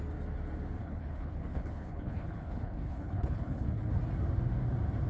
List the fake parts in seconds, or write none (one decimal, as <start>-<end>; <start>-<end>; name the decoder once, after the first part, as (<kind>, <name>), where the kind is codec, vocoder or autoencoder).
0.8-3.9 (codec, HILCodec)